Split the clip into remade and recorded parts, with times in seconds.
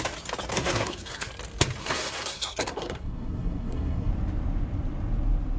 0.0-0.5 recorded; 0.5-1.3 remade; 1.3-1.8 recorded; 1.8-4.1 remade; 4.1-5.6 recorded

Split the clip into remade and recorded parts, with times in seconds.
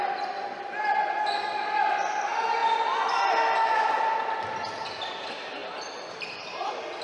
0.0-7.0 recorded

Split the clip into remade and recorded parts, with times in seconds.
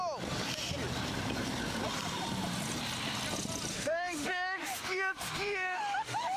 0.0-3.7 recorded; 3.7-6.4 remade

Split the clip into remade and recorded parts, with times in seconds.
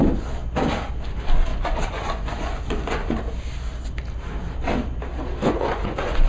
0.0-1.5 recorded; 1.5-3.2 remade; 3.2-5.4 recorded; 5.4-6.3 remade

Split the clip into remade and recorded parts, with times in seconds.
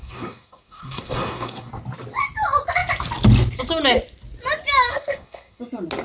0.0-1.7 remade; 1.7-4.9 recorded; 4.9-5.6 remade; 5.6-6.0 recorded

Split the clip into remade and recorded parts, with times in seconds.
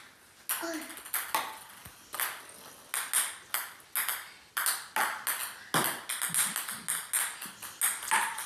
0.0-8.5 recorded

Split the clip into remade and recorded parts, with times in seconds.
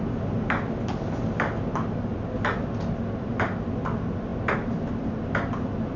0.0-6.0 recorded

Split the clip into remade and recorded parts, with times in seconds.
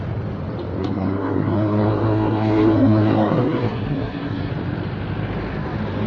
0.0-0.8 recorded; 0.8-4.5 remade; 4.5-6.1 recorded